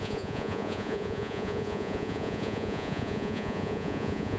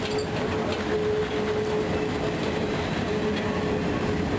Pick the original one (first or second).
second